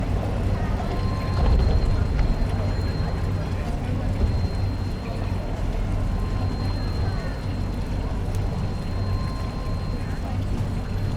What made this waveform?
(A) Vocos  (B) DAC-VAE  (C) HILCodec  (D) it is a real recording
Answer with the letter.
D